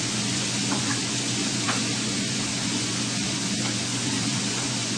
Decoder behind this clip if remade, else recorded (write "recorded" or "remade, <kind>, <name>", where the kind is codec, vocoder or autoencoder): remade, vocoder, Vocos